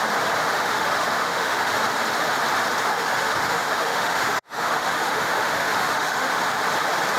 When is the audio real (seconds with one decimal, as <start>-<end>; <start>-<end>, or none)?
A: 0.0-0.4; 1.7-2.9; 6.4-7.2